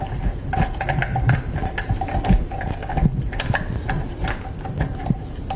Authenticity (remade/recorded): recorded